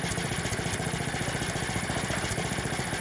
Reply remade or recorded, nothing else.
recorded